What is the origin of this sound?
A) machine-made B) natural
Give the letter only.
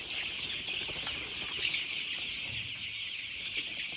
B